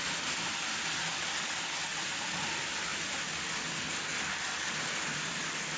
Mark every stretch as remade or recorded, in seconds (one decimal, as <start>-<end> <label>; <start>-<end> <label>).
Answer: 0.0-5.8 recorded